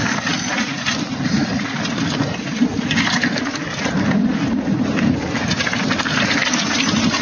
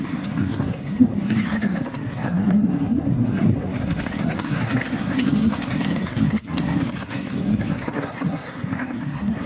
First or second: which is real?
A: first